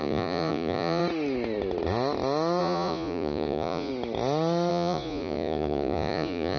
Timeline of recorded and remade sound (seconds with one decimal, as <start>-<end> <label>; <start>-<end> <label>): 0.0-1.0 remade; 1.0-2.6 recorded; 2.6-3.9 remade; 3.9-4.7 recorded; 4.7-6.6 remade

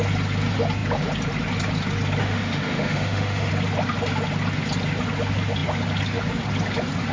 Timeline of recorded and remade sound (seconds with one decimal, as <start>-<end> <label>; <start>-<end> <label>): 0.0-2.2 recorded; 2.2-3.5 remade; 3.5-7.1 recorded

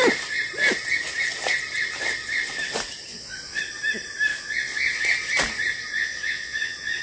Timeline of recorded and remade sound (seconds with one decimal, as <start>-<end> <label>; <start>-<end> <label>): 0.0-3.1 recorded; 3.1-3.6 remade; 3.6-4.3 recorded; 4.3-5.0 remade; 5.0-5.9 recorded; 5.9-7.0 remade

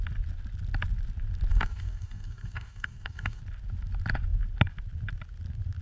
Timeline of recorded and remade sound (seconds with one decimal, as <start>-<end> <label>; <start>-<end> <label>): 0.0-1.5 recorded; 1.5-3.4 remade; 3.4-5.8 recorded

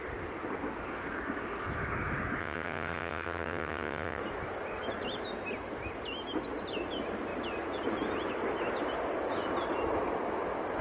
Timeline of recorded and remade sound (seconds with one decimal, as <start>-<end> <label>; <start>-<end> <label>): 0.0-2.4 recorded; 2.4-4.2 remade; 4.2-10.8 recorded